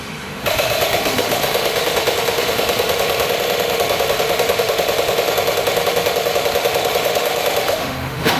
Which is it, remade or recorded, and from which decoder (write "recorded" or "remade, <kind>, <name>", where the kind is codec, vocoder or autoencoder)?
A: remade, autoencoder, DAC-VAE